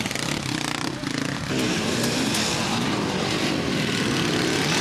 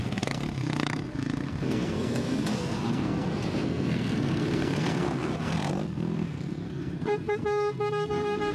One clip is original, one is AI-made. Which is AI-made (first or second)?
second